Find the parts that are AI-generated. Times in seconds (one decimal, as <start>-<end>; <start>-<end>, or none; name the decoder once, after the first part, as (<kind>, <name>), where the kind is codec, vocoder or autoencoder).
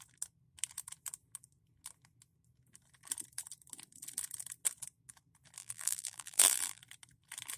5.6-6.8 (vocoder, BigVGAN v2)